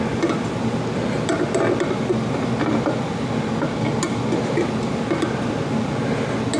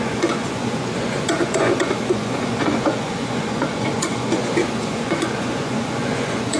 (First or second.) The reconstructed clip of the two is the second